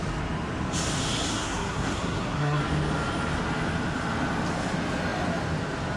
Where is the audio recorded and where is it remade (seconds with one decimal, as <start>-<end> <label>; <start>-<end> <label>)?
0.0-1.3 recorded; 1.3-2.6 remade; 2.6-6.0 recorded